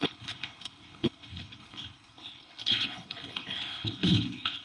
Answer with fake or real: fake